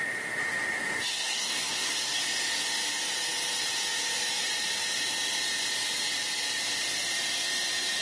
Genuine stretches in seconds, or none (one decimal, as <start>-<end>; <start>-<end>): 0.0-1.1; 2.2-8.0